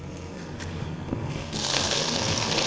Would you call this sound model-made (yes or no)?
yes